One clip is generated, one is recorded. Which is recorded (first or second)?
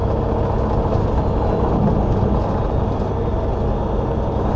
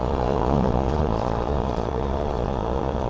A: first